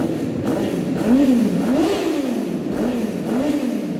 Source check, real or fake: real